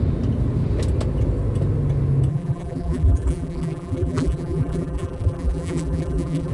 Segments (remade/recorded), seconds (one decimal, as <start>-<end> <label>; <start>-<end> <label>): 0.0-2.3 recorded; 2.3-6.5 remade